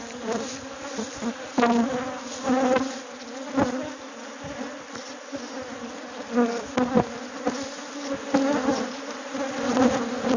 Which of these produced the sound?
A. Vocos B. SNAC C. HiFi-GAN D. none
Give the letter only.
D